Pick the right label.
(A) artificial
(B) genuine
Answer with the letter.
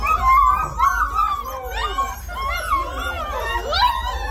B